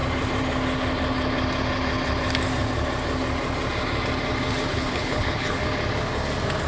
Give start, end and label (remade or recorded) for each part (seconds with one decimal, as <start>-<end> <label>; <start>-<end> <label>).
0.0-4.7 recorded; 4.7-5.6 remade; 5.6-6.7 recorded